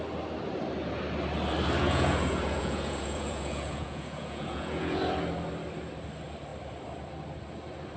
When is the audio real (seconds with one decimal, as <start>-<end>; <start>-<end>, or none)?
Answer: 0.0-1.8; 5.0-8.0

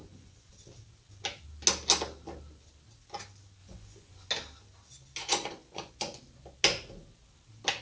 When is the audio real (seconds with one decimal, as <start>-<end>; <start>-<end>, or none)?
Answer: 0.5-3.6; 4.3-5.2; 6.2-7.8

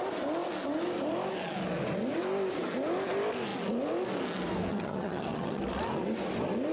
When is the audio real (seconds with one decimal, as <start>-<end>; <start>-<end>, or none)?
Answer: 0.0-4.7; 5.6-6.7

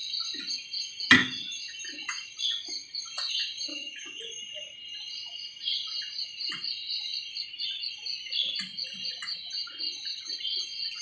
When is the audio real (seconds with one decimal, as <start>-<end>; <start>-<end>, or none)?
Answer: 0.0-3.7; 4.2-11.0

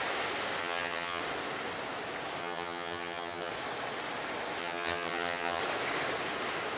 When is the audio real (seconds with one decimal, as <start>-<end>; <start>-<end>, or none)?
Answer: 0.0-0.6; 1.2-2.4; 3.5-4.6; 5.6-6.8

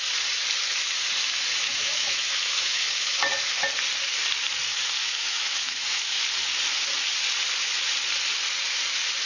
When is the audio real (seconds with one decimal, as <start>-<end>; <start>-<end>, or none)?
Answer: 0.0-1.6; 3.3-5.0; 6.2-9.3